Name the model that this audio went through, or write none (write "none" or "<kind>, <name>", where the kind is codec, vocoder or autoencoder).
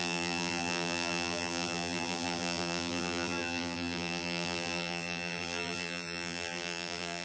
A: vocoder, BigVGAN v2